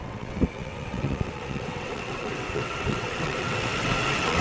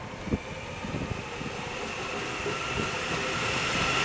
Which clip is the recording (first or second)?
second